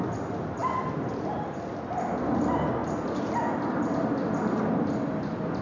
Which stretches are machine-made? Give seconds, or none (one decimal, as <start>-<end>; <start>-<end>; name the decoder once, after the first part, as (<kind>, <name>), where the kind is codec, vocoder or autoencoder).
none